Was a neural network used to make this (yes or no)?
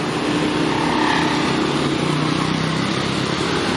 no